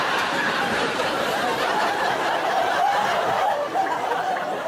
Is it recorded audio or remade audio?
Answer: remade